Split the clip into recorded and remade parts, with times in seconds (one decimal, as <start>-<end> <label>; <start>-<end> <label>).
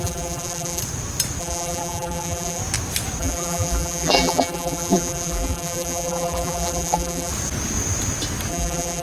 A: 0.0-0.8 remade; 0.8-1.4 recorded; 1.4-2.6 remade; 2.6-3.2 recorded; 3.2-7.3 remade; 7.3-8.5 recorded; 8.5-9.0 remade